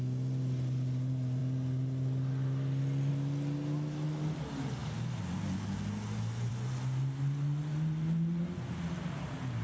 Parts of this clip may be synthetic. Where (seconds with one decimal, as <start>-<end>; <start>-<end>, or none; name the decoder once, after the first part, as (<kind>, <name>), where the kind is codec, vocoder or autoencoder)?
none